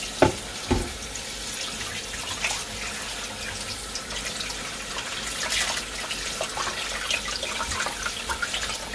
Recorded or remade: recorded